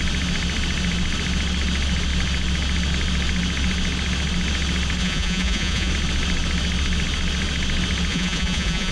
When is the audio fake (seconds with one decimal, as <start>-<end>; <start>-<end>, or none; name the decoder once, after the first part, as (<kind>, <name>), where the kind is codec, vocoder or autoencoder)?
5.0-5.9 (vocoder, Vocos); 8.1-8.9